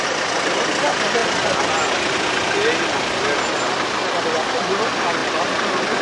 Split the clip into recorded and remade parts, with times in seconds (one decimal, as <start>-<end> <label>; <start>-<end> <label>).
0.0-6.0 recorded